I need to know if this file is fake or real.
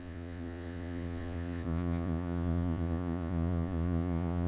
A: fake